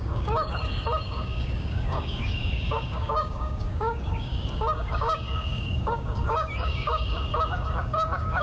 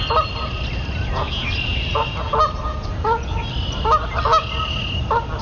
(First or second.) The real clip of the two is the second